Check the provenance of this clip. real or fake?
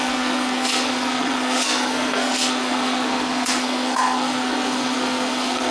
fake